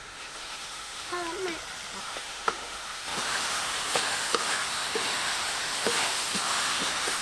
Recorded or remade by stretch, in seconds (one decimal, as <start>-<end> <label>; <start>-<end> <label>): 0.0-1.1 remade; 1.1-2.0 recorded; 2.0-7.2 remade